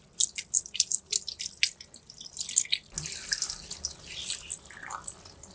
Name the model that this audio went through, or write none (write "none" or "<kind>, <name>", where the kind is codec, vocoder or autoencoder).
none